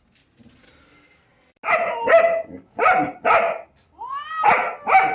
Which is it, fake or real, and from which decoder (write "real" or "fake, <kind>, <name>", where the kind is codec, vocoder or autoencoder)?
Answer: real